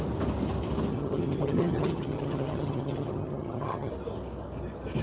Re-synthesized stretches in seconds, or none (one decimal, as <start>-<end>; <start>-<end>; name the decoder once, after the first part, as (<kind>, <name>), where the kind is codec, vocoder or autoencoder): 0.9-3.9 (vocoder, HiFi-GAN)